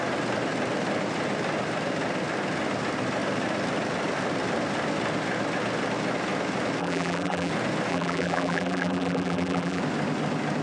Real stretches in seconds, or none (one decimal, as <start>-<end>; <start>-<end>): 0.0-6.8; 7.5-7.9; 9.8-10.6